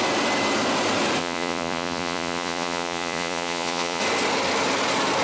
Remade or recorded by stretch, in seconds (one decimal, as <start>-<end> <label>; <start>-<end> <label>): 0.0-1.2 recorded; 1.2-4.0 remade; 4.0-5.2 recorded